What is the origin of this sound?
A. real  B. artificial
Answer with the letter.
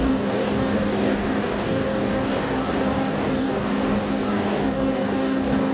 B